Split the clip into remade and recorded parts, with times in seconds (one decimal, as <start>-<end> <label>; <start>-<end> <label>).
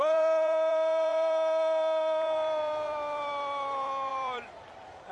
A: 0.0-5.1 remade